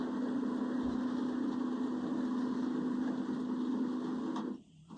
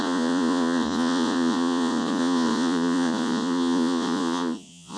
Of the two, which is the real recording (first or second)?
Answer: first